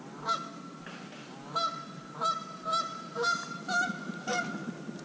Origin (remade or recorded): recorded